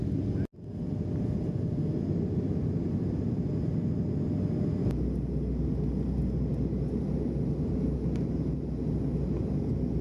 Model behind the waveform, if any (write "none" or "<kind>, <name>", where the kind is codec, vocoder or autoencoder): none